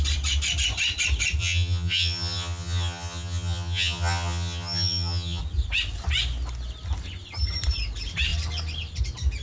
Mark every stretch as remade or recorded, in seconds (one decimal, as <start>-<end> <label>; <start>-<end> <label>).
0.0-1.4 recorded; 1.4-5.4 remade; 5.4-9.4 recorded